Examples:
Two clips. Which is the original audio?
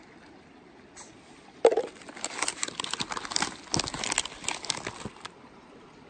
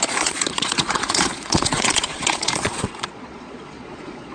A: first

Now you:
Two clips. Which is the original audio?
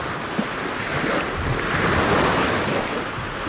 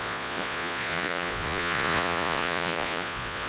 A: first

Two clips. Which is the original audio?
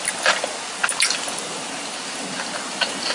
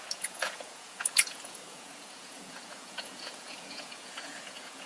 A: first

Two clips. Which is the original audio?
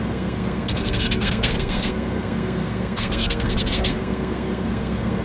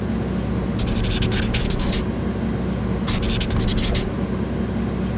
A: second